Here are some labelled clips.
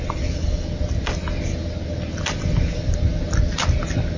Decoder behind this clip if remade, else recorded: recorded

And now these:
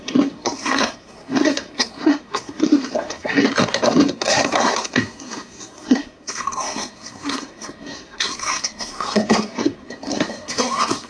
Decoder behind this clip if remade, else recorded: remade, codec, SNAC